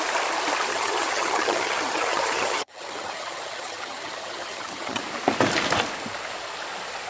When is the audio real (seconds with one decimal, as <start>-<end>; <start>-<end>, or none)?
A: 0.0-0.7; 5.0-7.1